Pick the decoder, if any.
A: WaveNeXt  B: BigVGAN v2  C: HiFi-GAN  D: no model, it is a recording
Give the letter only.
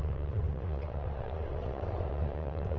A